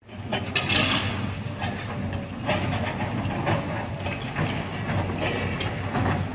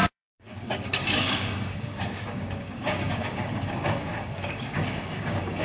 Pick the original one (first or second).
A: first